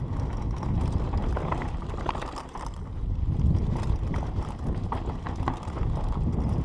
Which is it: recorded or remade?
recorded